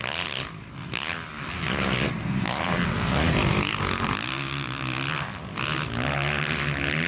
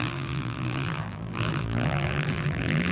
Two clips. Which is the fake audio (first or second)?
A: second